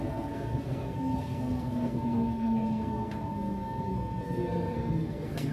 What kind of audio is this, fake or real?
fake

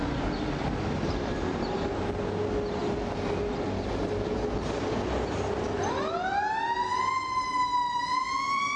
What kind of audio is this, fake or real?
real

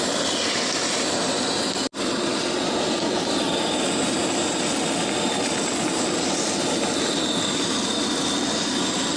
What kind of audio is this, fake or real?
real